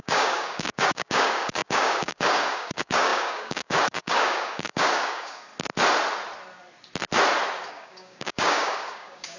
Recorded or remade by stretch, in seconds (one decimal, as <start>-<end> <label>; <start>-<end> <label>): 0.0-5.5 remade; 5.5-7.7 recorded; 7.7-9.4 remade